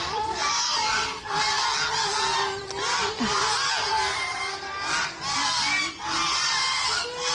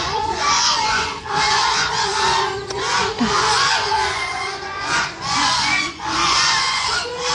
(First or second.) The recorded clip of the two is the first